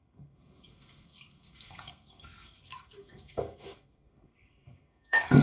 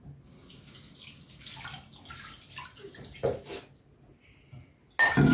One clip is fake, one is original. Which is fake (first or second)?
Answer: first